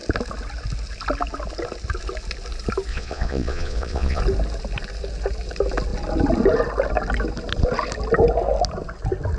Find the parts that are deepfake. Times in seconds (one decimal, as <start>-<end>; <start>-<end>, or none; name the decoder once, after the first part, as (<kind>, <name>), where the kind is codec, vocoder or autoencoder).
2.9-4.2 (vocoder, Vocos)